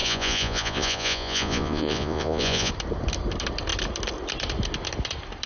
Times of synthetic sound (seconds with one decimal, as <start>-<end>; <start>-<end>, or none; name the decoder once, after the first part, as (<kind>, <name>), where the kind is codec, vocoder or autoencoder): 0.0-2.7 (vocoder, Vocos)